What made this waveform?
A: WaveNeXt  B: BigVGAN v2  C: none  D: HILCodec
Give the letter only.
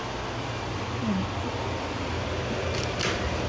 C